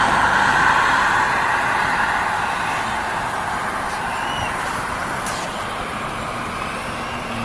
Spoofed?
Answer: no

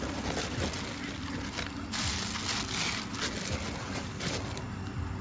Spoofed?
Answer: no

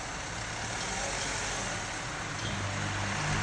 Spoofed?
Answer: no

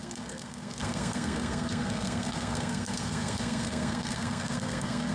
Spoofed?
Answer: yes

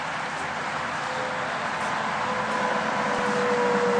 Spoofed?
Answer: no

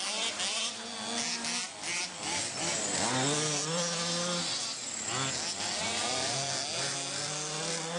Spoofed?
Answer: no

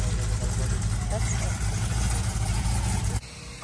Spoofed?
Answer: no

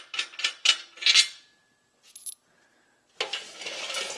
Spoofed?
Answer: no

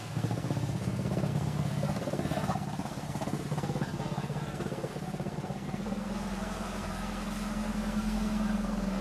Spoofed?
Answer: yes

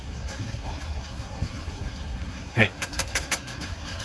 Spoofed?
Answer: yes